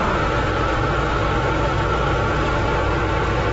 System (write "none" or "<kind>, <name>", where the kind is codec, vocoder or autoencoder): none